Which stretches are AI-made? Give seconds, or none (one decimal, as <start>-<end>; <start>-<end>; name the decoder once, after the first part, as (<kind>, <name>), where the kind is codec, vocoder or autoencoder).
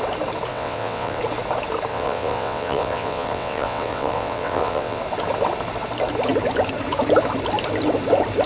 0.5-1.2 (vocoder, WaveNeXt); 1.9-5.0